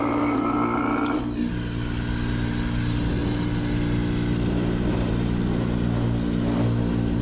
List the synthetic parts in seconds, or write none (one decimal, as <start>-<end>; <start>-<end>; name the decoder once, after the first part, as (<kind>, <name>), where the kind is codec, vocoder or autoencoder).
none